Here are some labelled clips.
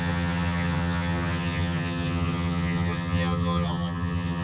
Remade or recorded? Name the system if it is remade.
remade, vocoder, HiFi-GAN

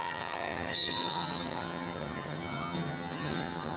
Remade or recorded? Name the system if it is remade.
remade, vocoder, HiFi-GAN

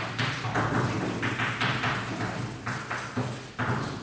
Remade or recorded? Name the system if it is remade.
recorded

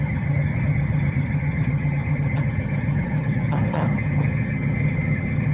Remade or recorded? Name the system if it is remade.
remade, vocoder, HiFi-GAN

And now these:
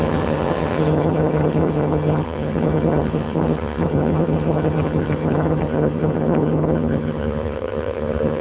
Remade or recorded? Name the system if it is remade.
remade, vocoder, HiFi-GAN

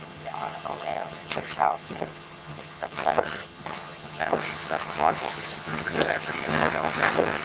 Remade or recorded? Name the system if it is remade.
remade, vocoder, HiFi-GAN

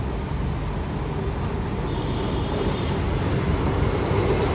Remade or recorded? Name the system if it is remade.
recorded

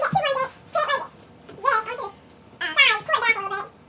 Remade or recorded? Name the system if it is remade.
recorded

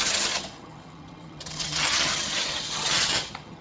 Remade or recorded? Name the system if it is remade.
remade, vocoder, HiFi-GAN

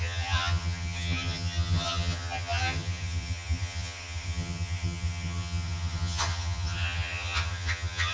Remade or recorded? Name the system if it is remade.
remade, vocoder, HiFi-GAN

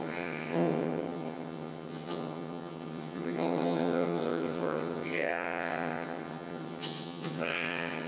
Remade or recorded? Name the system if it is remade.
remade, vocoder, HiFi-GAN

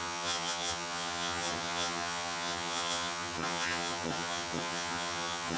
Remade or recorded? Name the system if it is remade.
remade, vocoder, HiFi-GAN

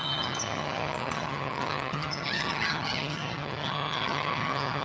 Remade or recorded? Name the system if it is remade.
remade, vocoder, HiFi-GAN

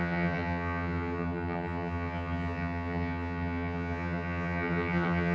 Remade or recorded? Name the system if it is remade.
remade, vocoder, HiFi-GAN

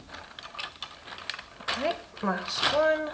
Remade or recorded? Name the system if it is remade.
recorded